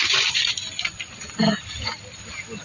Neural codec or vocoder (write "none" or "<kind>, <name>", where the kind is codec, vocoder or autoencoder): none